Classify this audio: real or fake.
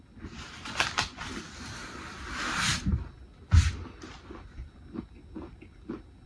real